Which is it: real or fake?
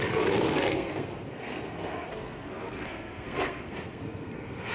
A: fake